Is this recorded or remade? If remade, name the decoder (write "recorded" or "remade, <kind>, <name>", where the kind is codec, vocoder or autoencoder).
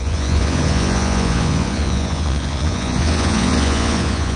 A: remade, vocoder, Vocos